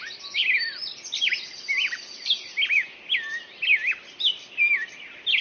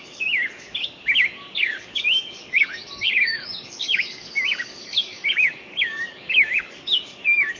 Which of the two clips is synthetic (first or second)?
second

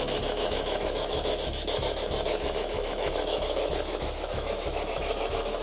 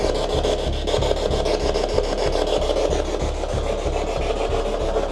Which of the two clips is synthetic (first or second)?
first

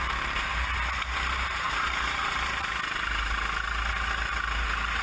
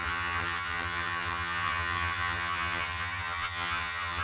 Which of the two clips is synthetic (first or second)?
second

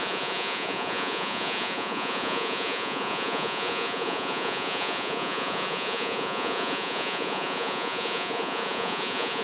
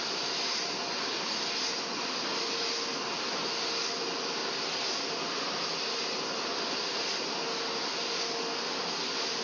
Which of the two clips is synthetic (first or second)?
first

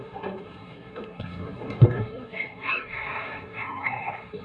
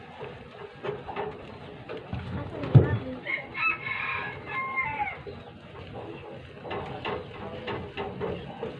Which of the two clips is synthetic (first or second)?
first